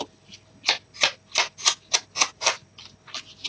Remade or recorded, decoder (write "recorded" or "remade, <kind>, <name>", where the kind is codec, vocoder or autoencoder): recorded